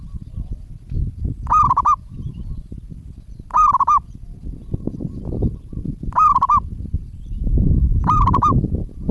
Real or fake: real